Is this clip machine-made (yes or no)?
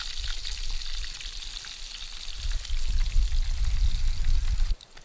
no